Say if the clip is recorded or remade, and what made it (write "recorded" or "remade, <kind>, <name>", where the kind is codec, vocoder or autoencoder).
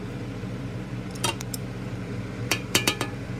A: remade, vocoder, BigVGAN v2